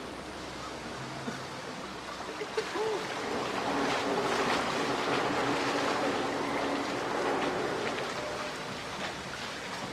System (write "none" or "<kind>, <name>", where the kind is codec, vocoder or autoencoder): none